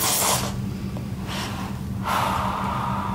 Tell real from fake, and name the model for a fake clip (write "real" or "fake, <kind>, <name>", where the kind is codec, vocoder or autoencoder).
real